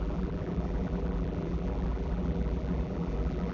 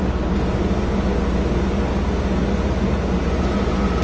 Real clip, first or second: second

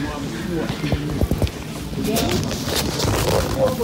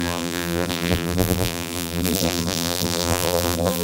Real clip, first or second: first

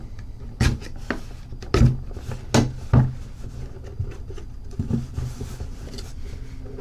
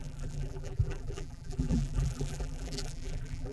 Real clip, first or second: first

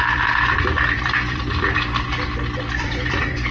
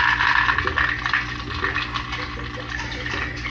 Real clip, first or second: second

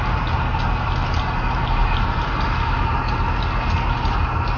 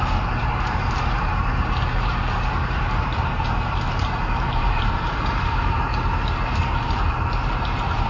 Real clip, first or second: first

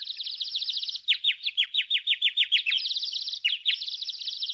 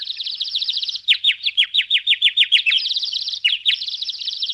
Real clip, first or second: first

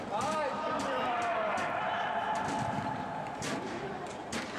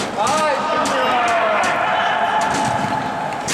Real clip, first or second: second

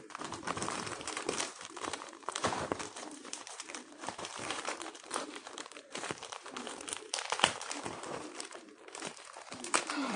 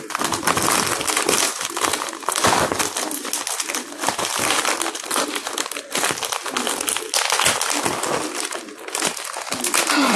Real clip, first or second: second